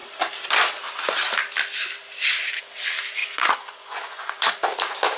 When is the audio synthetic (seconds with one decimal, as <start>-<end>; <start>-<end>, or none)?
3.2-4.5